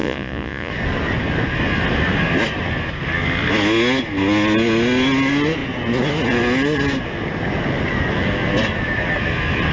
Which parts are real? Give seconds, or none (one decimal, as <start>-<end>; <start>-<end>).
0.7-9.7